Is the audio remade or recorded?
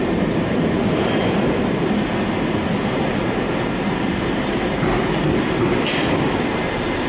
recorded